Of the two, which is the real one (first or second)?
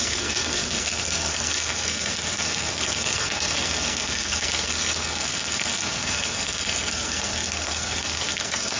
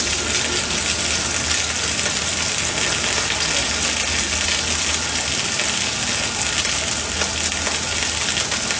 second